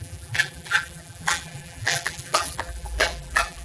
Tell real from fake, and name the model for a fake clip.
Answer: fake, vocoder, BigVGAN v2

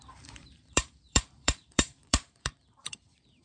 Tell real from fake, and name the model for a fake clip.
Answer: fake, vocoder, BigVGAN v2